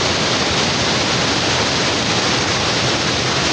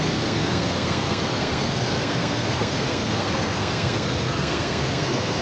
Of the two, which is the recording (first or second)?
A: first